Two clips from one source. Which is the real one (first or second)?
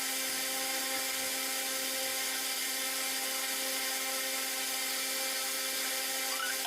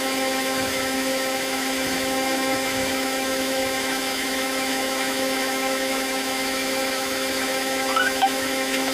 first